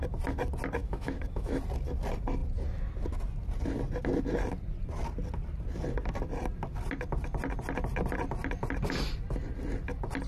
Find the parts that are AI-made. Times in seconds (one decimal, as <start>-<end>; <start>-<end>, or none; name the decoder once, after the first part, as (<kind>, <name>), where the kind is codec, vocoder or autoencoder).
0.8-1.6 (autoencoder, DAC-VAE)